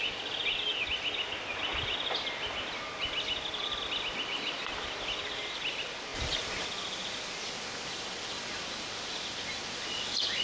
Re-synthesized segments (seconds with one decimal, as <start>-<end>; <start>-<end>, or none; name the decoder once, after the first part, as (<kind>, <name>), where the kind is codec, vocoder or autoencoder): none